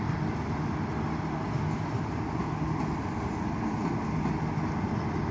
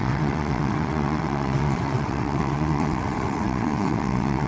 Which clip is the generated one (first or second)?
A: second